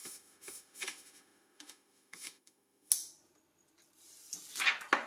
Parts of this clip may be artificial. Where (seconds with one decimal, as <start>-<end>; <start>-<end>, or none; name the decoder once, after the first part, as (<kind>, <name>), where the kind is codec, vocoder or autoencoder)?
0.0-2.9 (autoencoder, DAC-VAE)